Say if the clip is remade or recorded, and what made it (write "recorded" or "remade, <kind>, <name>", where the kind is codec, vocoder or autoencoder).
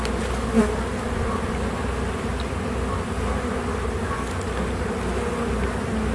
recorded